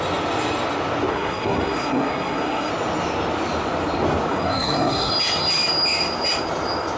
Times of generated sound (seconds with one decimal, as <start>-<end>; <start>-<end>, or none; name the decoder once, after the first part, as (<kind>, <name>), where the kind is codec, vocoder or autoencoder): 1.1-2.7 (codec, SNAC); 4.3-5.1